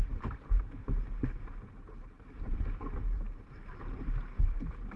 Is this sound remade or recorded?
remade